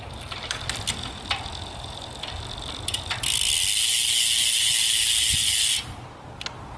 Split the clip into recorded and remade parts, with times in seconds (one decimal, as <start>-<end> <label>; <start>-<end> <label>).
0.0-6.8 recorded